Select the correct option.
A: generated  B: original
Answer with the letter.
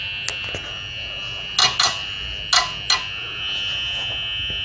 B